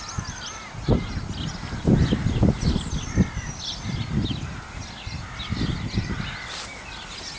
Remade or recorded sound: recorded